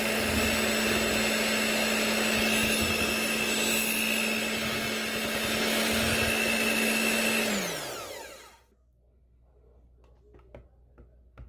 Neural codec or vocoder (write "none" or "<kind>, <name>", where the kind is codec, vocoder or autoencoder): none